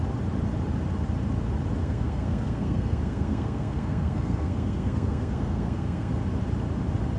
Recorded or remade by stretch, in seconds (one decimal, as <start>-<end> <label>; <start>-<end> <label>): 0.0-1.8 recorded; 1.8-6.1 remade; 6.1-7.2 recorded